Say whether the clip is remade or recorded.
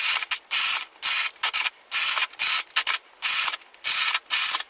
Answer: recorded